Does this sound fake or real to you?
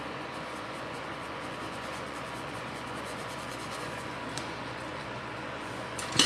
fake